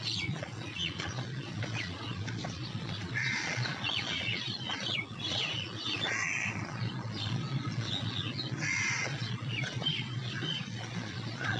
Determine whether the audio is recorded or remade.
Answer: remade